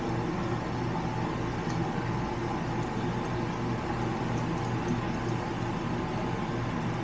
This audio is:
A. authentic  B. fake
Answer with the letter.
A